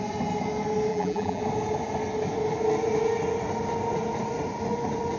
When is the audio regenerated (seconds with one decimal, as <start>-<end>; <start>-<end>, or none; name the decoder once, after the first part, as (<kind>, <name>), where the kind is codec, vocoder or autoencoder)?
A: 0.9-1.4 (vocoder, BigVGAN v2)